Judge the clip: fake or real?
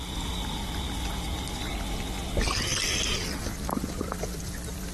real